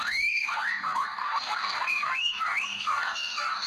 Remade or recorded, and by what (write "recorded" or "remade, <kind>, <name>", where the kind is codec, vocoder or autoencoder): remade, codec, DAC